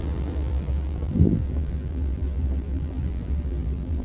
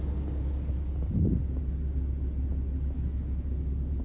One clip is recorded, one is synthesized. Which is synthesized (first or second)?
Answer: first